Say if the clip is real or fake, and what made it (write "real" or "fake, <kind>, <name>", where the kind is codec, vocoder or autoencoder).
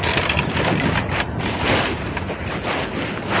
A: real